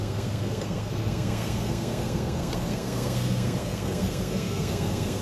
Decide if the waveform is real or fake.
fake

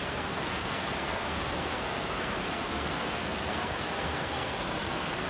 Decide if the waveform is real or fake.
fake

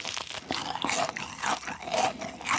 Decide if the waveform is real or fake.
real